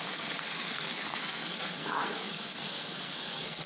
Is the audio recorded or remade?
remade